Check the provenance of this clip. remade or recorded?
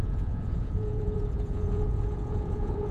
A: remade